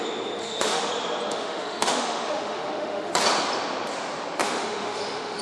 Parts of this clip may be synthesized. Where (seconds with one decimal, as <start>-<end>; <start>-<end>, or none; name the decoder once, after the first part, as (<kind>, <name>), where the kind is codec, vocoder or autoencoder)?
0.4-0.9 (autoencoder, DAC-VAE); 1.3-3.1; 4.4-5.4